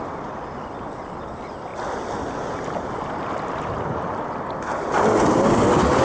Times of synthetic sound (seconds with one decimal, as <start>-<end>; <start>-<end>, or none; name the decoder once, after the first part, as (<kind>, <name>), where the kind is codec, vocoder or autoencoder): none